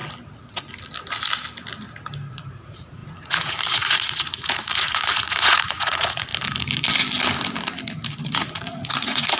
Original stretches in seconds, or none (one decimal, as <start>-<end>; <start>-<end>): 0.0-2.3; 6.3-8.2

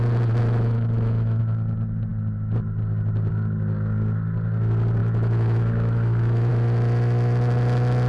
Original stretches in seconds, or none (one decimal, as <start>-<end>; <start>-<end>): 0.0-0.4; 1.4-5.0; 6.5-8.1

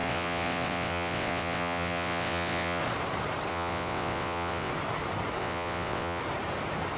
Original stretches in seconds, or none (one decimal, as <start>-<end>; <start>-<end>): 2.8-3.5; 4.7-5.4; 6.2-7.0

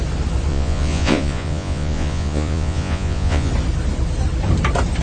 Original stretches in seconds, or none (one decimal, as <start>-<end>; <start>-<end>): 0.0-0.5; 3.5-5.0

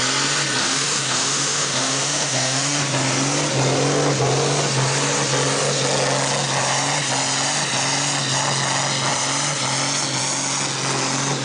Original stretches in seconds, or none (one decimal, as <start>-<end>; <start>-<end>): 0.0-0.6; 2.8-11.4